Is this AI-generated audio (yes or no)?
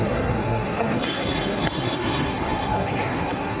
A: yes